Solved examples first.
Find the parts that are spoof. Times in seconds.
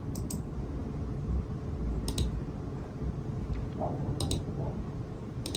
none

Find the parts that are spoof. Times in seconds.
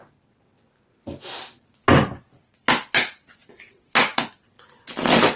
1.9-5.4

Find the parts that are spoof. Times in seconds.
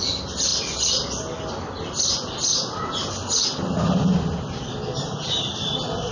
0.5-3.1